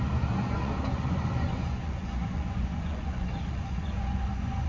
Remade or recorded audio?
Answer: remade